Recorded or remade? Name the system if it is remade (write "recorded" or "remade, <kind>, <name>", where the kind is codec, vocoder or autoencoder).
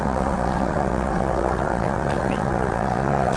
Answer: remade, vocoder, WaveNeXt